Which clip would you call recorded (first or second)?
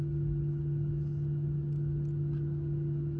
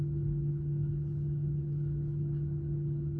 first